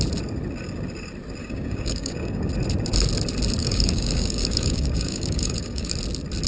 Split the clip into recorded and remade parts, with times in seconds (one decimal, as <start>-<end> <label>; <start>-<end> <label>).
0.0-1.4 recorded; 1.4-2.5 remade; 2.5-3.6 recorded; 3.6-5.9 remade; 5.9-6.5 recorded